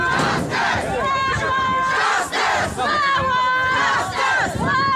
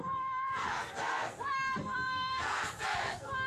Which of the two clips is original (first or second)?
first